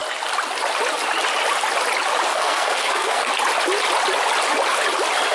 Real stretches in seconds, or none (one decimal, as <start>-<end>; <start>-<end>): 0.0-2.3; 3.3-5.3